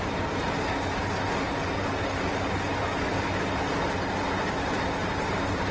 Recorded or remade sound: recorded